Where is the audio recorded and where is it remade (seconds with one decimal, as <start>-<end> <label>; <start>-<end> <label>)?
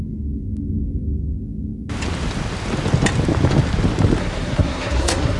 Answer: 0.0-4.2 recorded; 4.2-5.4 remade